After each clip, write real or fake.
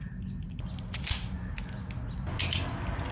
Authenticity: real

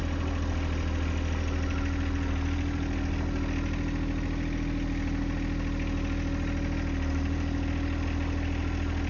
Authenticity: real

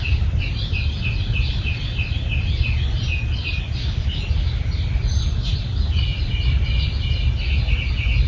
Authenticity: real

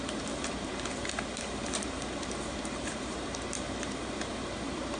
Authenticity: fake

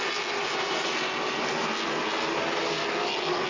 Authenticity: real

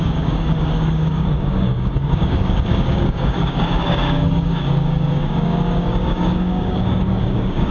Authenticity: fake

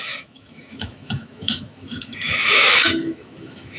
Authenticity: fake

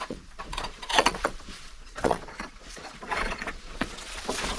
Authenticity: fake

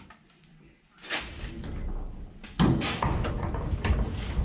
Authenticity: real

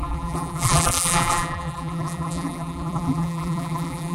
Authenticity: fake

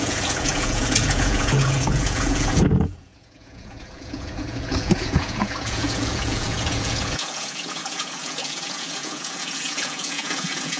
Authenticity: fake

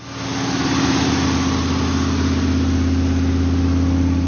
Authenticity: real